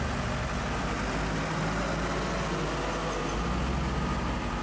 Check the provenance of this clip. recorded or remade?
recorded